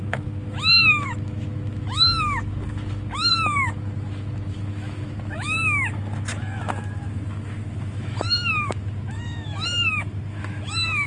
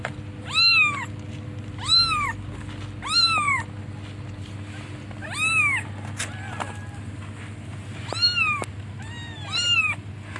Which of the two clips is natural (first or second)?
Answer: second